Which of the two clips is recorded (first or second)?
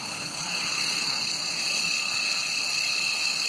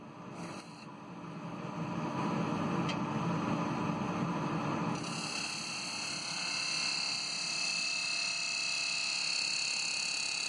second